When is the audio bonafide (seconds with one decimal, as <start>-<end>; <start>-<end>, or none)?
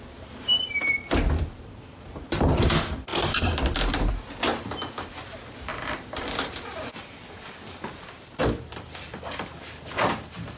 0.0-0.8; 2.7-3.1; 4.1-5.7; 10.0-10.6